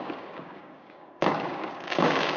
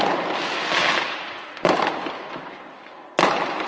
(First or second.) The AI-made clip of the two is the first